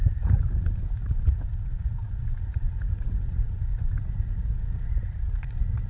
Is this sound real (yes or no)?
no